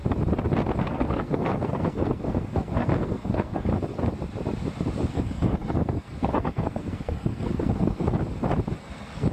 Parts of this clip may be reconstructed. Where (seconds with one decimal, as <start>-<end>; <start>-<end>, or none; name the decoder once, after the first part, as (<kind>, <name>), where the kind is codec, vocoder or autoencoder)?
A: 0.8-3.7 (codec, SNAC); 5.1-8.2; 8.8-9.3